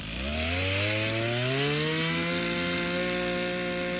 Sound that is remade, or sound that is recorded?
recorded